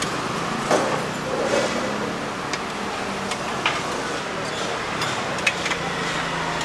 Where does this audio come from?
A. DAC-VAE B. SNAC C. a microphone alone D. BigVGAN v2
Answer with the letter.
C